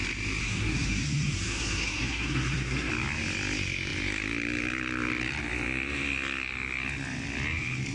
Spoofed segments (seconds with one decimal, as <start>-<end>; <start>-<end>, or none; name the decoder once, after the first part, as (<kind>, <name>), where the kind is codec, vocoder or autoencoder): 0.4-2.9 (codec, SNAC)